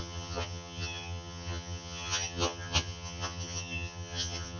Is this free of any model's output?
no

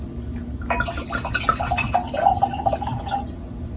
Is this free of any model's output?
yes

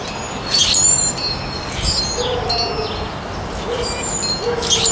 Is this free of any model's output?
yes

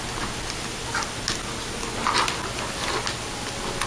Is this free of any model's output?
yes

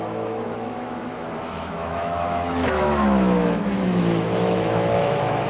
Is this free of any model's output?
no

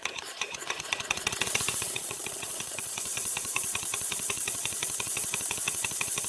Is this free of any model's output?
no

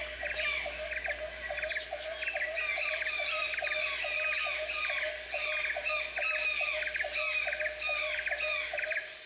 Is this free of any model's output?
yes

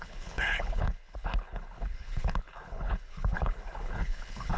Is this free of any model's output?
no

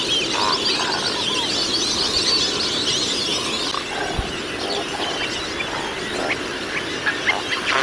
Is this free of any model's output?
yes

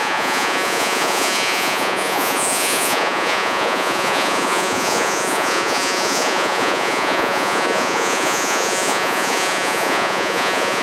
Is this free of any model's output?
no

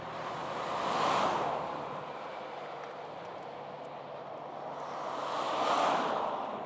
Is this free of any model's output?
yes